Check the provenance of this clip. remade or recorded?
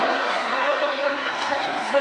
remade